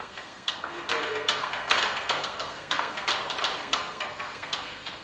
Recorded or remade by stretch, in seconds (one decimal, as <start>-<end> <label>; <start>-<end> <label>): 0.0-3.1 remade; 3.1-3.6 recorded; 3.6-5.0 remade